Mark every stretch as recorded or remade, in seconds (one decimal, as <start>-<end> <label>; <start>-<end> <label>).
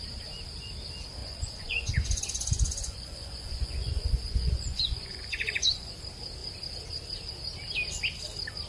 0.0-1.2 recorded; 1.2-5.9 remade; 5.9-8.7 recorded